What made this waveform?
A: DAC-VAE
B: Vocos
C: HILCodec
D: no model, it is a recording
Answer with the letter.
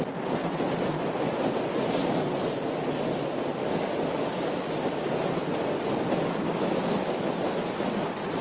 D